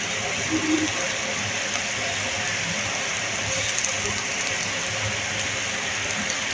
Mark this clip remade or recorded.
recorded